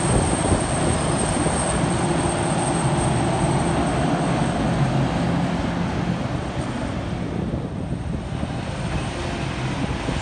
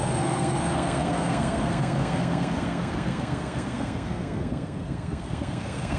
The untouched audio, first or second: first